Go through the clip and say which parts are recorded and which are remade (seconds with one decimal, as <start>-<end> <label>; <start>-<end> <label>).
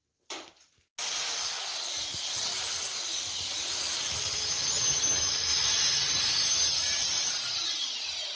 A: 0.0-6.8 recorded; 6.8-8.4 remade